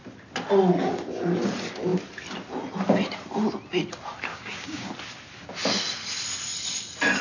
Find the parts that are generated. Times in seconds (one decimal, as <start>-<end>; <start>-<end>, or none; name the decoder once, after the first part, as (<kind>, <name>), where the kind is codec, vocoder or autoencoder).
4.3-4.9 (codec, DAC)